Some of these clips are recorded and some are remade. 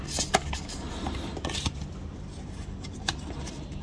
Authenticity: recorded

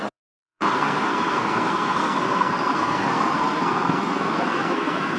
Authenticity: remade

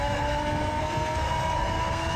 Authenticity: remade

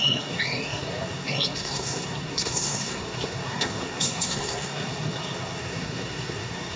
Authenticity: remade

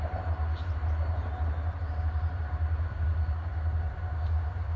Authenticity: recorded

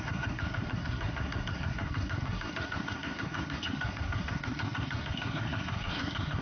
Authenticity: remade